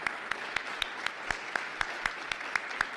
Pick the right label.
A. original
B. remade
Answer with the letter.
A